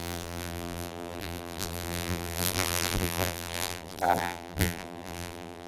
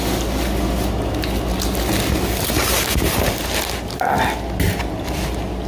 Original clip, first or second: second